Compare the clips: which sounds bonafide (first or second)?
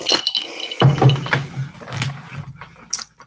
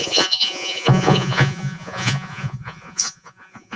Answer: first